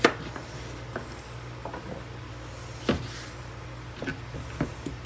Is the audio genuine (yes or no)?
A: yes